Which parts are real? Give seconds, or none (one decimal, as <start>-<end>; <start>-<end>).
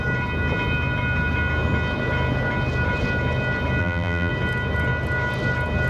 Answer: 0.0-3.8; 4.3-5.9